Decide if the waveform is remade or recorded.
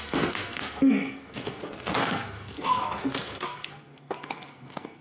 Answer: remade